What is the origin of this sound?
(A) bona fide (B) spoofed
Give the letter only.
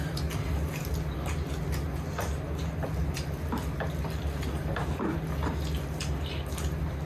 A